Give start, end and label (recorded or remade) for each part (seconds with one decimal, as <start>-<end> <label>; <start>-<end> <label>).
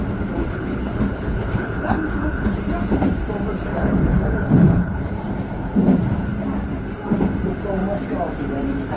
0.0-0.4 recorded; 0.4-2.6 remade; 2.6-3.7 recorded; 3.7-5.1 remade; 5.1-9.0 recorded